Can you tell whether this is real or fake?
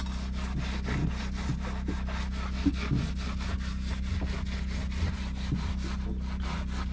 real